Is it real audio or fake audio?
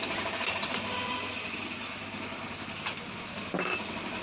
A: real